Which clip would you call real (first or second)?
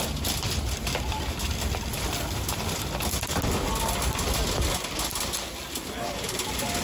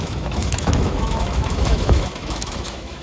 first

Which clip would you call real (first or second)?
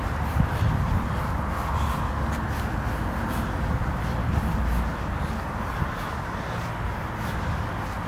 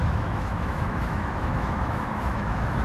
first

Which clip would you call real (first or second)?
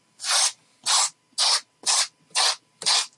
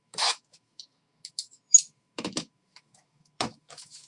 first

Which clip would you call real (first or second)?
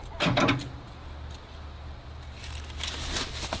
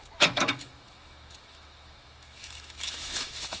first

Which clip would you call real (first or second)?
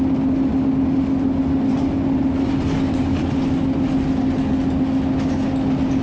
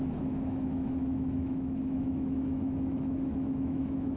first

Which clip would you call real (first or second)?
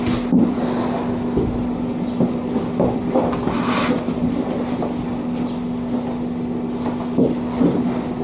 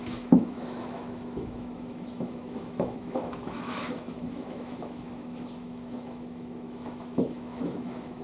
first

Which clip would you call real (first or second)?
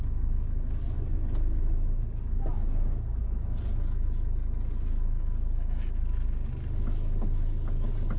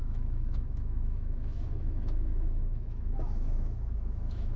first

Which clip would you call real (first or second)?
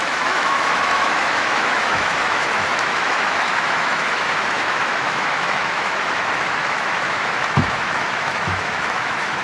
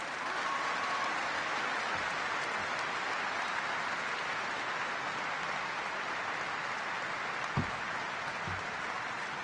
second